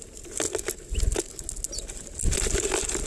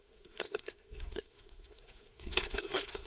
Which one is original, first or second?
first